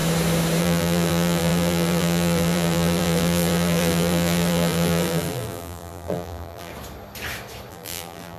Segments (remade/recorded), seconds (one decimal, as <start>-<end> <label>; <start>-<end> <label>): 0.0-0.6 recorded; 0.6-6.7 remade; 6.7-7.7 recorded; 7.7-8.4 remade

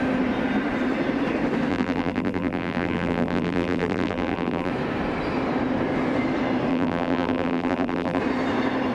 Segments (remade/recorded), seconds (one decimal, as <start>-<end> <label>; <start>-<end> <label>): 0.0-1.7 recorded; 1.7-4.7 remade; 4.7-6.7 recorded; 6.7-8.2 remade; 8.2-8.9 recorded

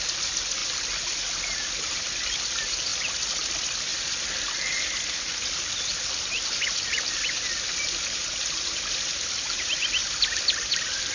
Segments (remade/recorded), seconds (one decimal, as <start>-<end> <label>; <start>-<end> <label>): 0.0-0.6 remade; 0.6-1.6 recorded; 1.6-2.9 remade; 2.9-3.5 recorded; 3.5-3.9 remade; 3.9-7.8 recorded; 7.8-11.1 remade